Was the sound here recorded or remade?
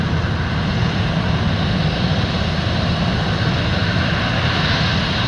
recorded